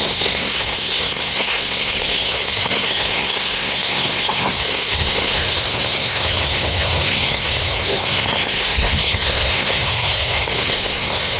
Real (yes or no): no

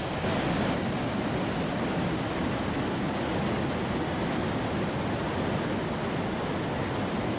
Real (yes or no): yes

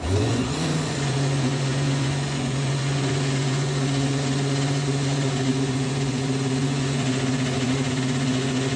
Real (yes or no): no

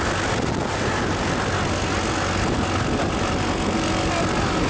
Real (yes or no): yes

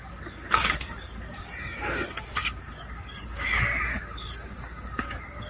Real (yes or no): no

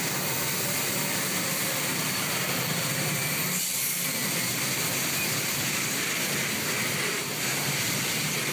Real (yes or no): no